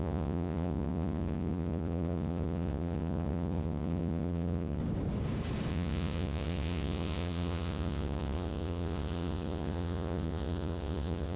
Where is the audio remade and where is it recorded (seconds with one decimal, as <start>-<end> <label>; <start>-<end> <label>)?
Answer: 0.0-4.8 remade; 4.8-5.7 recorded; 5.7-11.4 remade